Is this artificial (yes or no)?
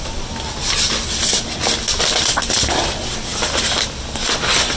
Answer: no